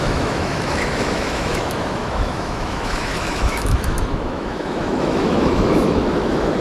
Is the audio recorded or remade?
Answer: remade